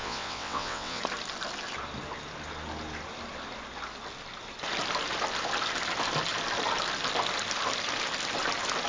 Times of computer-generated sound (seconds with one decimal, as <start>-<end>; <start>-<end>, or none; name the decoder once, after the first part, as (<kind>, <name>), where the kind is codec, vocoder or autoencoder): 0.0-1.0 (vocoder, WaveNeXt)